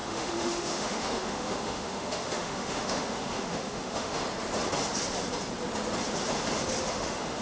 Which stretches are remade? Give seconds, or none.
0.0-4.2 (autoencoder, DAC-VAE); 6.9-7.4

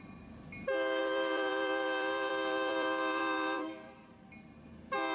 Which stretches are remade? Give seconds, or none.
1.0-4.1 (vocoder, BigVGAN v2)

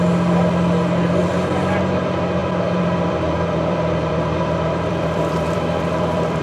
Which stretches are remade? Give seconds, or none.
2.4-6.4 (vocoder, BigVGAN v2)

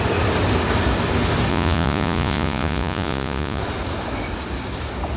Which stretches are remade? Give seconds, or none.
1.5-3.6 (vocoder, Vocos)